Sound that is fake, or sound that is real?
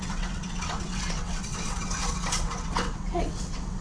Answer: fake